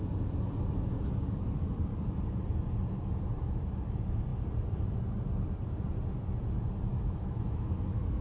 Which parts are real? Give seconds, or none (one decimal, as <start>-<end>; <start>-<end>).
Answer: 0.0-6.9